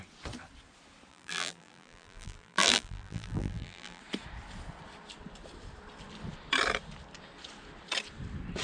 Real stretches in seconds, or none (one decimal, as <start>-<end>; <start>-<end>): 0.0-1.1; 4.0-8.6